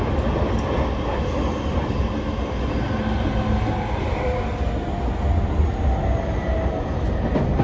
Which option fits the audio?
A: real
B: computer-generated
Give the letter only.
A